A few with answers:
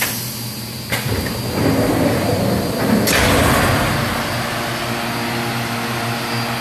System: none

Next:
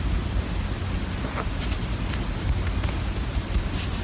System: none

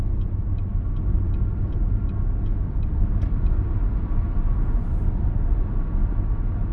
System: none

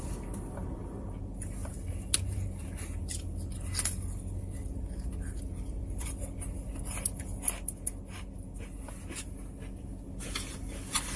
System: none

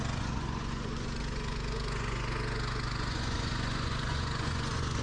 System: vocoder, Vocos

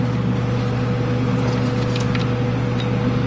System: none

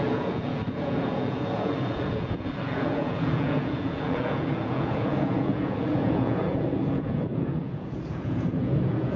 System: vocoder, Vocos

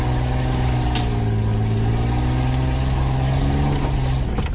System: none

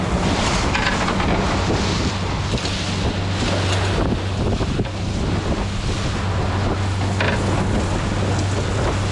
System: none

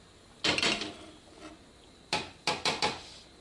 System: none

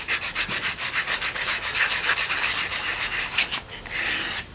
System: none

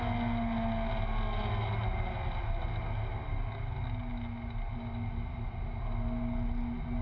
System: none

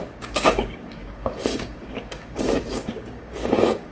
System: codec, DAC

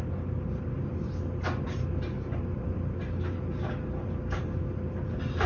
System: none